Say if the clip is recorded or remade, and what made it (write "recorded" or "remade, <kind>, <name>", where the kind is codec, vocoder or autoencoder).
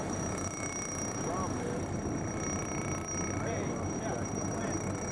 recorded